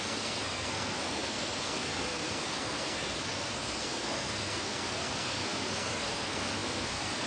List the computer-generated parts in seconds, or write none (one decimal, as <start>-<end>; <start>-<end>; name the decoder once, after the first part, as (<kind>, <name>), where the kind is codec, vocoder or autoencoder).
0.0-7.3 (codec, SNAC)